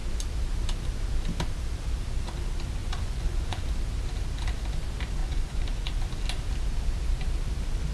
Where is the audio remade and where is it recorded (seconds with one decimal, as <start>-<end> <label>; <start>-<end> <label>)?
0.0-2.8 recorded; 2.8-3.6 remade; 3.6-5.2 recorded; 5.2-5.9 remade; 5.9-7.9 recorded